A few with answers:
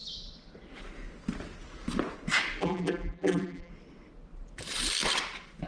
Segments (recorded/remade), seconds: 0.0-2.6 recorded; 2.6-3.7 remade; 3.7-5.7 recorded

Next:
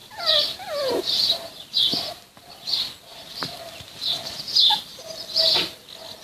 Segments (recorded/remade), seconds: 0.0-1.5 remade; 1.5-3.1 recorded; 3.1-4.1 remade; 4.1-6.2 recorded

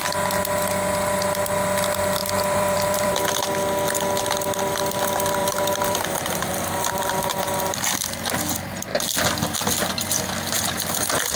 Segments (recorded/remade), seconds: 0.0-2.2 recorded; 2.2-3.1 remade; 3.1-5.4 recorded; 5.4-7.6 remade; 7.6-11.4 recorded

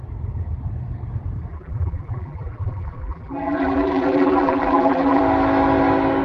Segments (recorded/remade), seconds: 0.0-1.5 recorded; 1.5-5.2 remade; 5.2-6.2 recorded

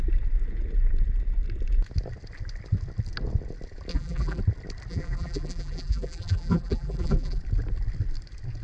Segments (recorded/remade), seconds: 0.0-3.9 recorded; 3.9-4.4 remade; 4.4-4.9 recorded; 4.9-7.4 remade; 7.4-8.6 recorded